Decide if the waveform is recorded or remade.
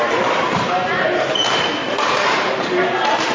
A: recorded